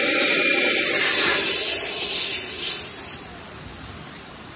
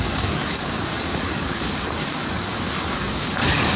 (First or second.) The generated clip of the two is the second